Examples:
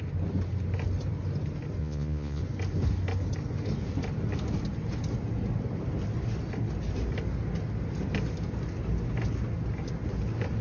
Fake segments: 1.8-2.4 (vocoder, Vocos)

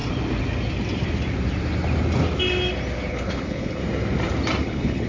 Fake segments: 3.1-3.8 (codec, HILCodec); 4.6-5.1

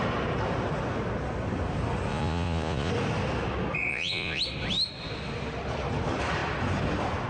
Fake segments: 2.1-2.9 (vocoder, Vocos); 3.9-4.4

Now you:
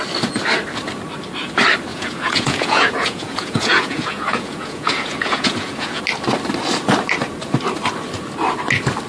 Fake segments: 1.9-6.0 (vocoder, Vocos)

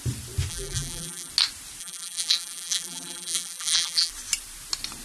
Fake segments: 0.5-1.3 (vocoder, BigVGAN v2); 1.8-4.1

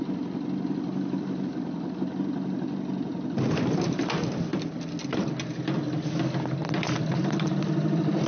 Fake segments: none